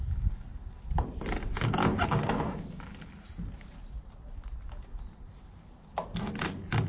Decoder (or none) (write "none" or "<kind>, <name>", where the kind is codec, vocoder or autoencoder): none